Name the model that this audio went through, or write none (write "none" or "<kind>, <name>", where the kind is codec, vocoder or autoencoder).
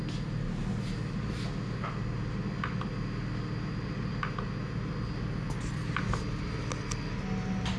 none